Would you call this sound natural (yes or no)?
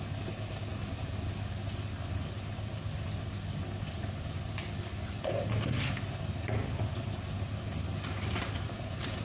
yes